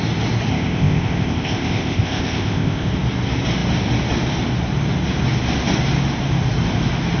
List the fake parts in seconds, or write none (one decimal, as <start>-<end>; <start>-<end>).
0.5-2.9